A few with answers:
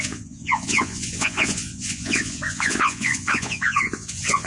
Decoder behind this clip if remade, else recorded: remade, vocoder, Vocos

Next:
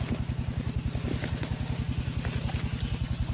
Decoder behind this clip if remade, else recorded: recorded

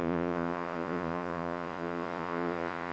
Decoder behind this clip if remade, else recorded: remade, vocoder, Vocos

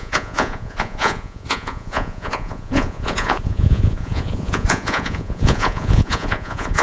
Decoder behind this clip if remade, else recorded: remade, vocoder, Vocos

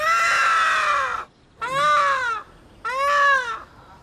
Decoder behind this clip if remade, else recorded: recorded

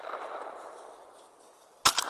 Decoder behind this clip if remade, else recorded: recorded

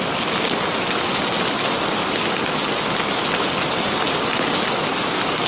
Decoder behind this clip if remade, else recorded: recorded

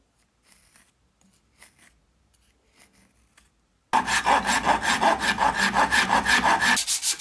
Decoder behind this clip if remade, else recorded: recorded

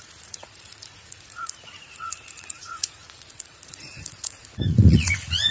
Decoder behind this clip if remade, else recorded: remade, vocoder, Vocos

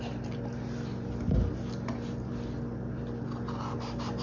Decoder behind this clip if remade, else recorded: recorded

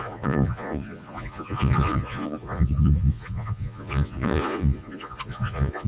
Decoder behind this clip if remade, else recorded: remade, vocoder, Vocos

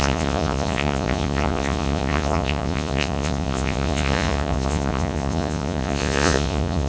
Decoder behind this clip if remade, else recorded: remade, vocoder, Vocos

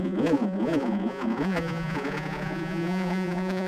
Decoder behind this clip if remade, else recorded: remade, vocoder, Vocos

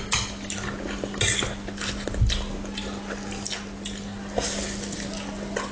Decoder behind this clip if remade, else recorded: recorded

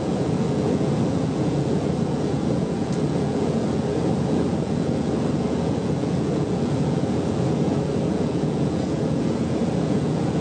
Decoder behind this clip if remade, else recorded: remade, vocoder, Vocos